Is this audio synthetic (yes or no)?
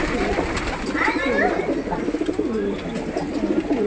no